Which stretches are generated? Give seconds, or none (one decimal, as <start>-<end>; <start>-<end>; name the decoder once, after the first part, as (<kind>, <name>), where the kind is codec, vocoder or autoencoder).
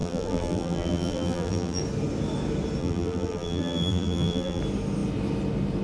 0.0-1.8 (vocoder, BigVGAN v2); 2.8-4.6